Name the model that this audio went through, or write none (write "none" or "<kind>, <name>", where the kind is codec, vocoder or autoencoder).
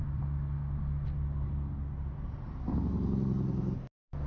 none